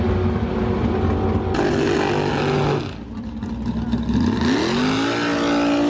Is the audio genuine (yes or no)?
yes